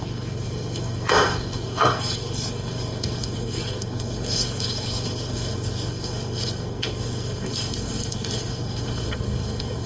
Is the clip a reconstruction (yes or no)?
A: yes